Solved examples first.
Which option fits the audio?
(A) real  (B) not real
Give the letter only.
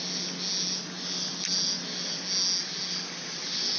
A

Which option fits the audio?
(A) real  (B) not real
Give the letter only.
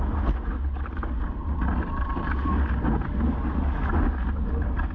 A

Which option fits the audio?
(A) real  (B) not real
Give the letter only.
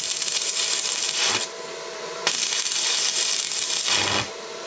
B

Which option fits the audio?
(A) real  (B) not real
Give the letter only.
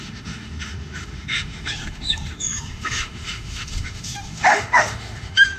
B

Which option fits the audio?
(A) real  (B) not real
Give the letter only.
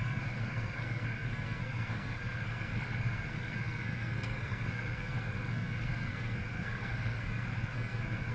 B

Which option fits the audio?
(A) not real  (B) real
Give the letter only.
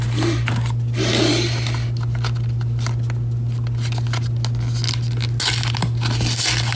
B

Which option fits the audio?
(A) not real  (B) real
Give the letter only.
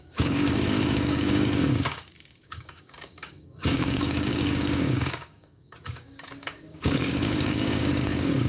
A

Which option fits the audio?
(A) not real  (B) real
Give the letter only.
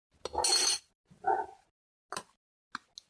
B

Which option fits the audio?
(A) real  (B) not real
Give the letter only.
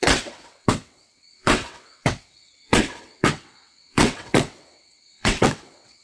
B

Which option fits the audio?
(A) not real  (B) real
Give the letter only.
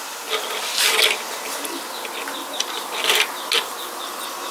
B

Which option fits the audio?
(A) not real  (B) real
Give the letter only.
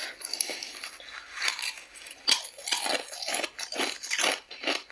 B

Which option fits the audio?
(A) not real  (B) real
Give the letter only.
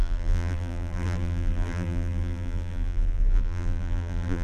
A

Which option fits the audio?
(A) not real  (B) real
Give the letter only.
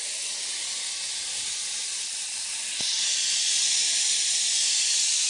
B